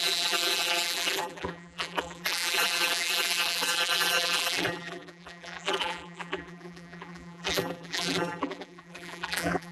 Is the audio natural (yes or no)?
no